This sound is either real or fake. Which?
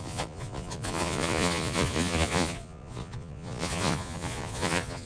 fake